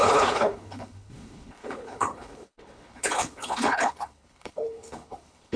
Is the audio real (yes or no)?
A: no